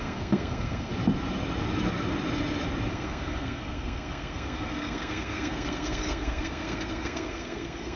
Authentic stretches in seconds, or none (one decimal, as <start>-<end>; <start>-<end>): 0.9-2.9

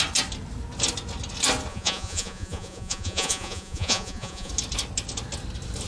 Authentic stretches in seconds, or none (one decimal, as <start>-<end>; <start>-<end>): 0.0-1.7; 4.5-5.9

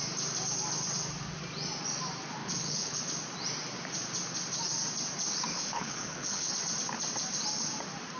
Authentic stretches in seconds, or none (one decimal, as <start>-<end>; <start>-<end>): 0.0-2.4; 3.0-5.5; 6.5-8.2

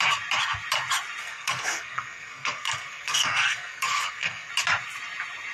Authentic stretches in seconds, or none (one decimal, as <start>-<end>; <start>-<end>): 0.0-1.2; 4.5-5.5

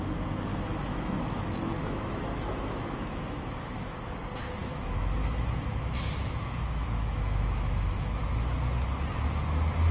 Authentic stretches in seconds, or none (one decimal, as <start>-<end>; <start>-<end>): 0.0-0.5; 4.0-4.6; 8.2-9.9

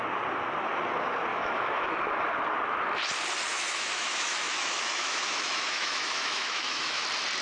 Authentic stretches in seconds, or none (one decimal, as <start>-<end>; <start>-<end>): 0.0-1.3; 2.0-3.5; 7.0-7.4

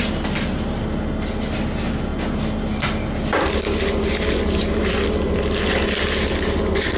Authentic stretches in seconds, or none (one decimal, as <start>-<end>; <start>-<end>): 0.0-7.0

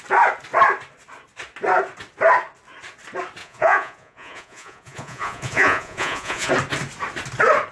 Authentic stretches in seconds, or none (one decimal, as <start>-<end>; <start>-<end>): 0.0-3.4; 6.5-7.7